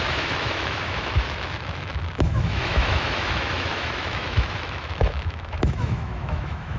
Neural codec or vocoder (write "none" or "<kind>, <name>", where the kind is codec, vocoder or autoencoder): autoencoder, DAC-VAE